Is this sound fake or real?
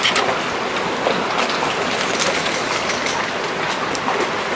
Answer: real